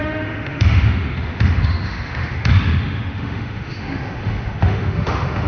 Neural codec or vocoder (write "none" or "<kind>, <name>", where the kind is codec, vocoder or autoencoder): autoencoder, DAC-VAE